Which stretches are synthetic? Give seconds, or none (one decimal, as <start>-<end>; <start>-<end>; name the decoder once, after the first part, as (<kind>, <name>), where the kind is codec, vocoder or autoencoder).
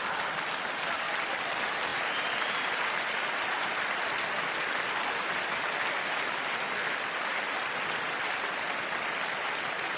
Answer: none